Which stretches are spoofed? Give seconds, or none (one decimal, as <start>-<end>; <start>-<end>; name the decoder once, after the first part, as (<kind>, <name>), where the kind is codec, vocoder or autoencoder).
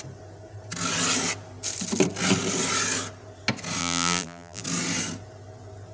3.8-4.6 (vocoder, BigVGAN v2)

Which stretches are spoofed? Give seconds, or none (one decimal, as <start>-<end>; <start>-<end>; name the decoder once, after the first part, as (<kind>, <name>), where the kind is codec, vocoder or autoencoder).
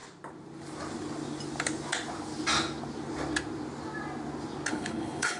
4.7-5.4 (codec, HILCodec)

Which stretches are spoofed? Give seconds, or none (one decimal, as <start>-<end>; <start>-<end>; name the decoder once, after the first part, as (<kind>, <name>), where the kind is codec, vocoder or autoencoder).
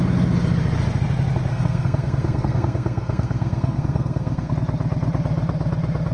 1.5-4.5 (codec, SNAC)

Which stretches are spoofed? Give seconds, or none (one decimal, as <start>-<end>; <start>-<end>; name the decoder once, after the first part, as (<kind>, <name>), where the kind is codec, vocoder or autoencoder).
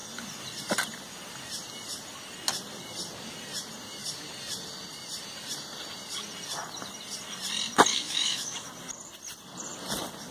7.9-8.7 (autoencoder, DAC-VAE)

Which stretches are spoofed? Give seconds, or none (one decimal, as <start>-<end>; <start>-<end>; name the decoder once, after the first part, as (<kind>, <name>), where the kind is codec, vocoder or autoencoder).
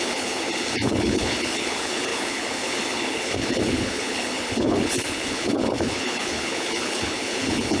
0.0-7.8 (codec, HILCodec)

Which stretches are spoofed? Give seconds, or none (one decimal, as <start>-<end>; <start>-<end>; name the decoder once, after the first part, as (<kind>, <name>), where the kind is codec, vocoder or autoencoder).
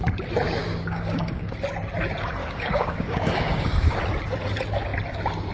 0.6-1.5 (codec, DAC); 2.4-4.0